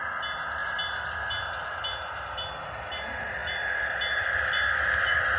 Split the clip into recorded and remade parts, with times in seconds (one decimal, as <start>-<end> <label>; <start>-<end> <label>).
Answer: 0.0-5.4 recorded